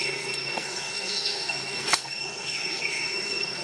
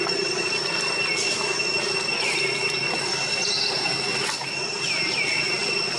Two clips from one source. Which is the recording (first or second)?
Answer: second